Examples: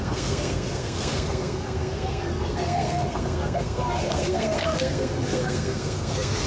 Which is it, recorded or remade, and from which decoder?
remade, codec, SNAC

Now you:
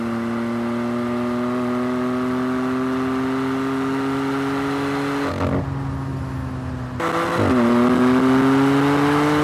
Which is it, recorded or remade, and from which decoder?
recorded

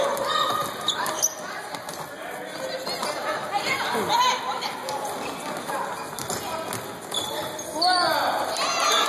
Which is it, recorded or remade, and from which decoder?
recorded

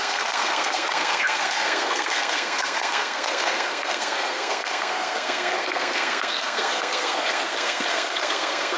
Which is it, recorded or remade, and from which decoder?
remade, codec, SNAC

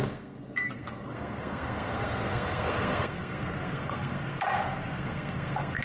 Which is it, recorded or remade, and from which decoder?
remade, codec, SNAC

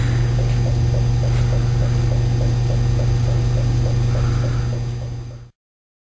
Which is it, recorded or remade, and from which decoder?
recorded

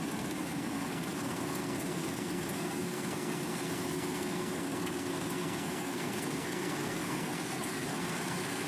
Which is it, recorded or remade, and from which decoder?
remade, codec, SNAC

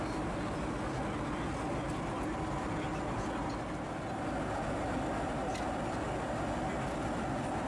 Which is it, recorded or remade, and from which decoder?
recorded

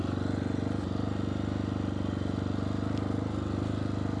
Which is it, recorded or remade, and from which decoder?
recorded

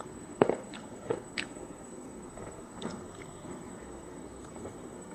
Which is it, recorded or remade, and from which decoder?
remade, codec, SNAC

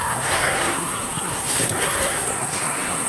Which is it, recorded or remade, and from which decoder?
remade, codec, SNAC